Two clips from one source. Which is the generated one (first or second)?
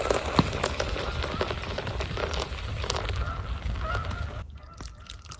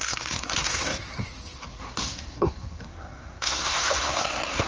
second